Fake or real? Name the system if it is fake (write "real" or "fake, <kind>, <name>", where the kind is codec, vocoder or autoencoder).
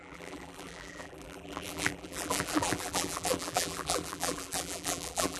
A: fake, vocoder, BigVGAN v2